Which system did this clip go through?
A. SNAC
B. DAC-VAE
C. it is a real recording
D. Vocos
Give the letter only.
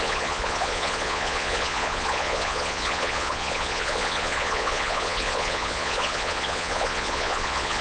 D